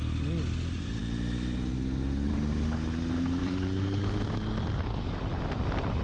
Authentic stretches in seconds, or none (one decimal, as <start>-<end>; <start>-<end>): 0.0-3.4; 4.0-6.0